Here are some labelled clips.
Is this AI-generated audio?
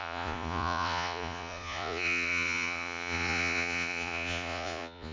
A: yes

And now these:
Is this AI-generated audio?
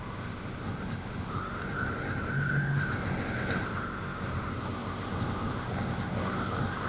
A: yes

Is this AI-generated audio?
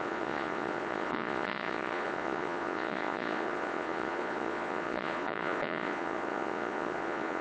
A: yes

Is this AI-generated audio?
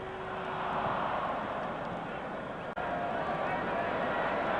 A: no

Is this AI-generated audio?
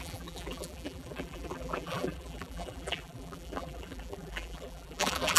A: yes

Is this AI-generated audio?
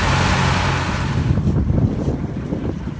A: no